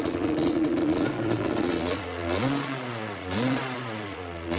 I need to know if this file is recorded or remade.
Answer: remade